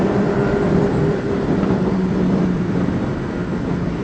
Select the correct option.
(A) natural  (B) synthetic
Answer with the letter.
B